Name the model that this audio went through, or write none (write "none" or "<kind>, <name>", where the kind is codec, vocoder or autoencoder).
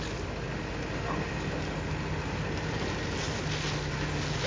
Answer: none